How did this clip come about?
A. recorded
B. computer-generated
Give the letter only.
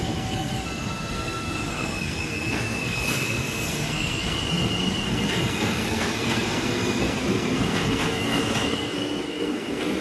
B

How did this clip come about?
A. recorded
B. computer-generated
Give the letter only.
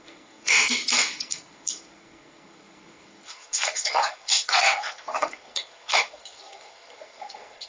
B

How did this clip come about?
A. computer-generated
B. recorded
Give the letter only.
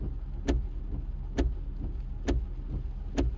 B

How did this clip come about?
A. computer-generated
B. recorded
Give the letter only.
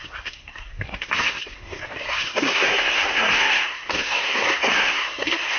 A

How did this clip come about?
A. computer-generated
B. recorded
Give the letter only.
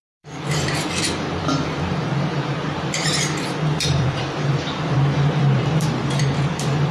A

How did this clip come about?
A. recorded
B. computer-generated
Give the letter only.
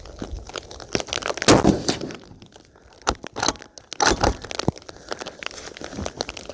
A